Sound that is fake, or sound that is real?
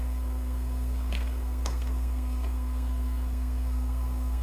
fake